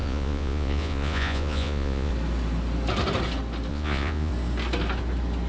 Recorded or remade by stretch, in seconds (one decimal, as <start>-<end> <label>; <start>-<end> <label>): 0.0-2.1 remade; 2.1-3.7 recorded; 3.7-4.3 remade; 4.3-5.5 recorded